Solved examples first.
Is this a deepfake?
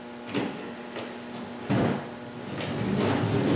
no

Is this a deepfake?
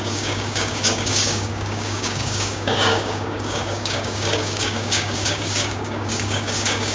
yes